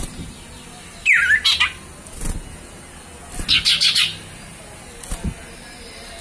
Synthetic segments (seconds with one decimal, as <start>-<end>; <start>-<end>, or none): none